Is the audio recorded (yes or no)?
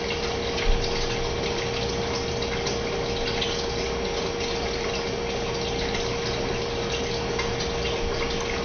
yes